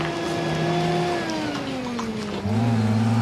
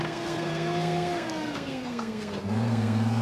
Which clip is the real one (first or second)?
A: first